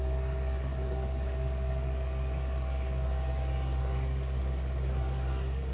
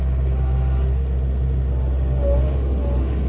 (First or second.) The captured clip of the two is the second